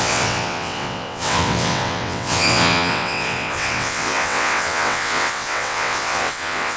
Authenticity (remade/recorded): remade